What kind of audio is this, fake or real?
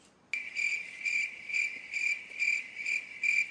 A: real